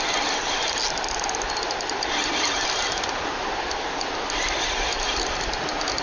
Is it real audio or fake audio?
real